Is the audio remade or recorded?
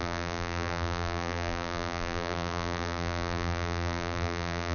remade